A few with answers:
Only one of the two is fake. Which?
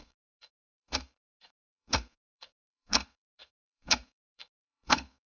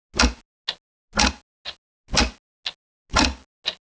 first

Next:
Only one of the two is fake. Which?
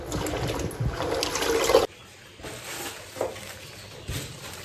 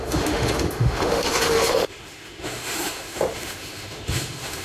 second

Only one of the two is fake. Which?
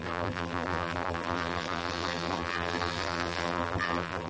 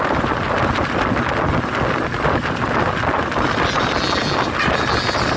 first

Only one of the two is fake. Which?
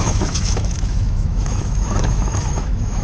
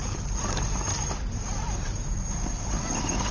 first